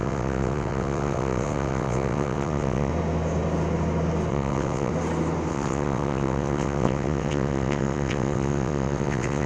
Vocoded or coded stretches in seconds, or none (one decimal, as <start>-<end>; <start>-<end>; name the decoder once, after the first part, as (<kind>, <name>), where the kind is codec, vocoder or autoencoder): 0.0-2.9 (vocoder, WaveNeXt); 4.3-4.9; 5.5-9.5